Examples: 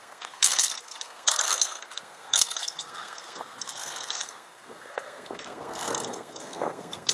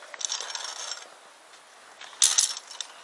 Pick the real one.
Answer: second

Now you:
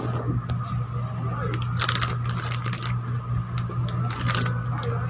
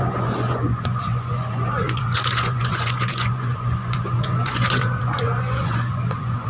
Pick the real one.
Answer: first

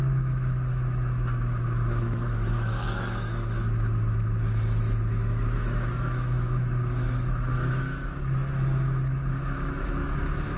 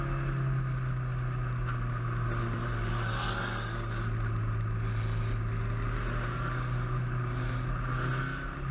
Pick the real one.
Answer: second